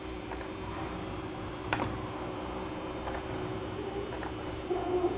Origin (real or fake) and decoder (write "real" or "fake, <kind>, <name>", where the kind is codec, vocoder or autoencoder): fake, vocoder, BigVGAN v2